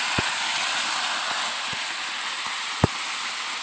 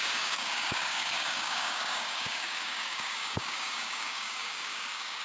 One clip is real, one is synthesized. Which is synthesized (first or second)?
second